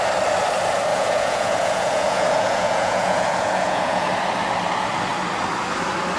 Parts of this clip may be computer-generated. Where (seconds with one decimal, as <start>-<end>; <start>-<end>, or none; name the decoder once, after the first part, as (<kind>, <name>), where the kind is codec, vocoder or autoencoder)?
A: 0.9-4.1 (vocoder, Vocos)